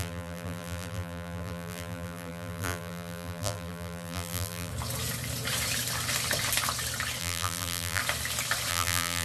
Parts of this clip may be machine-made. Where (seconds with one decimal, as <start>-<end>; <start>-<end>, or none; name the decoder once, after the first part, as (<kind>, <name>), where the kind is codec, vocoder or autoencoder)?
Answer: 0.0-4.7 (vocoder, BigVGAN v2); 7.2-8.0; 8.7-9.2